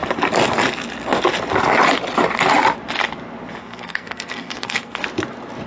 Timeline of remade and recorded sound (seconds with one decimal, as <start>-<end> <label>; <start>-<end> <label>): 0.0-3.6 recorded; 3.6-5.0 remade; 5.0-5.7 recorded